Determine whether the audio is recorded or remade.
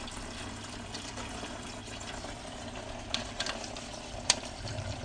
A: remade